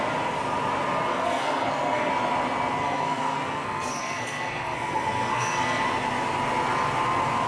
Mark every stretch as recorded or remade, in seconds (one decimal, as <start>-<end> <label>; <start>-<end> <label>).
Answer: 0.0-1.1 recorded; 1.1-2.1 remade; 2.1-2.8 recorded; 2.8-5.8 remade; 5.8-7.5 recorded